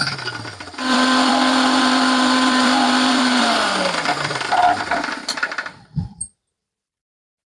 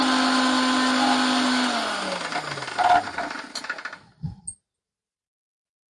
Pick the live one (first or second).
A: second